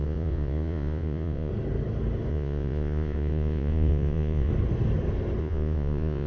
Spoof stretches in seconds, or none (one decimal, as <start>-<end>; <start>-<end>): 0.0-1.5; 2.3-4.5; 5.4-6.3